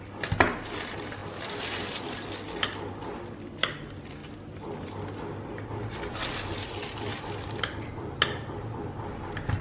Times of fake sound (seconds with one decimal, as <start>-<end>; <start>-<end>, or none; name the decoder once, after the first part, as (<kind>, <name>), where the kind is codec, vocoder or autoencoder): 7.1-7.9 (vocoder, BigVGAN v2)